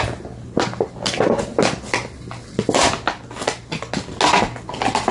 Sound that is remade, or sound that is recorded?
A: recorded